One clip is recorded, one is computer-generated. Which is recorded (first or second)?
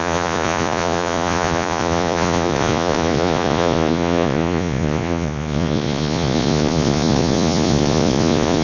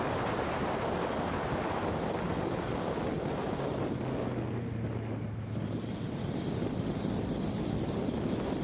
second